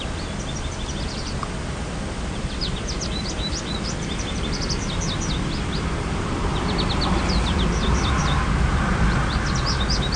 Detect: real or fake real